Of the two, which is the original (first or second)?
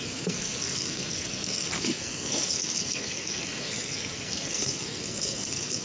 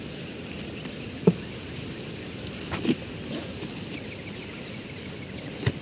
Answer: second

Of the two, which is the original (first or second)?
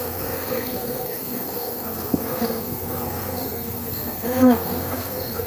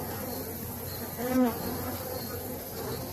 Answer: second